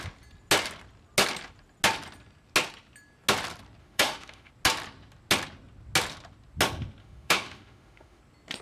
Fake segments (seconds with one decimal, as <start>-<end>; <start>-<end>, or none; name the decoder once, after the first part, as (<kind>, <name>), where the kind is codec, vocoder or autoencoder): 3.8-4.5 (autoencoder, DAC-VAE); 7.0-8.2